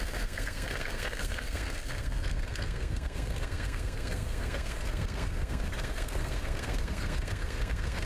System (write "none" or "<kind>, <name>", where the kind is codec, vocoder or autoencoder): codec, SNAC